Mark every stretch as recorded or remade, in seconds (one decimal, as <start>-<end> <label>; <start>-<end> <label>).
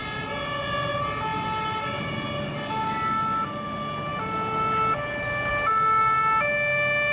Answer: 0.0-7.1 recorded